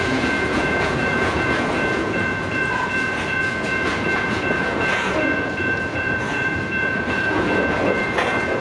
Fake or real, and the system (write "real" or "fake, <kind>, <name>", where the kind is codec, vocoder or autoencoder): fake, vocoder, Vocos